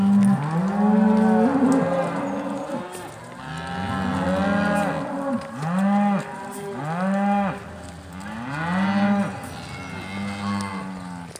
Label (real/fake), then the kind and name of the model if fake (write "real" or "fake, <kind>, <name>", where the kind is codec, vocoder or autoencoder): real